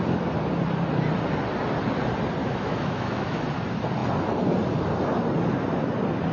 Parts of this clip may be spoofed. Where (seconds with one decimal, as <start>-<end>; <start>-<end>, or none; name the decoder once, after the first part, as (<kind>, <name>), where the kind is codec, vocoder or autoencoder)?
2.4-3.4 (autoencoder, DAC-VAE)